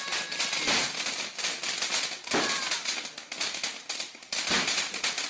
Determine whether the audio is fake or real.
real